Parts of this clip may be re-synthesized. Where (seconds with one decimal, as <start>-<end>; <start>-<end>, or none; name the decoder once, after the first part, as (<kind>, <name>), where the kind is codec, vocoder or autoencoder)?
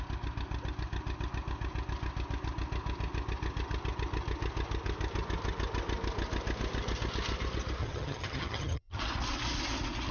7.8-9.0 (vocoder, HiFi-GAN)